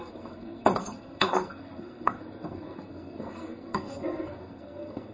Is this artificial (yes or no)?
yes